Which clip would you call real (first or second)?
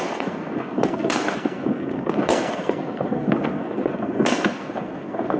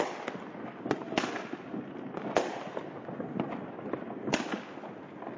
second